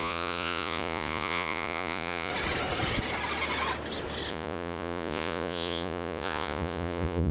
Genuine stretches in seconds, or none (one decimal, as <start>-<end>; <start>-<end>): 2.3-4.3